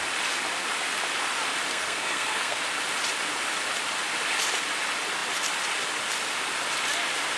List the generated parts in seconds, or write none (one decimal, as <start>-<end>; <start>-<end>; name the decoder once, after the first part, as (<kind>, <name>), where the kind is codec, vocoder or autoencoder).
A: 1.7-2.6 (codec, SNAC)